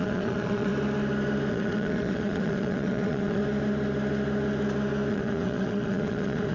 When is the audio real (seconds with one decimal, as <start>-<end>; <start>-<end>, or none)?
0.7-1.5; 3.4-5.1